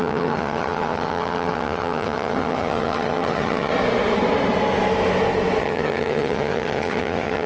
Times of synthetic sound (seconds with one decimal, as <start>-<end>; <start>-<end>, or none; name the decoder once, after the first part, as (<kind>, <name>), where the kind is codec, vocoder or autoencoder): 0.0-3.7 (vocoder, HiFi-GAN); 5.6-7.5